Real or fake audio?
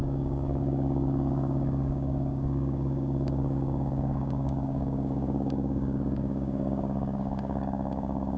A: fake